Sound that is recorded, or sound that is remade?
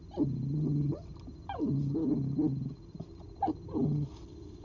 recorded